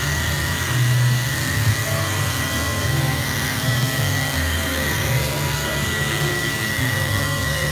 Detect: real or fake fake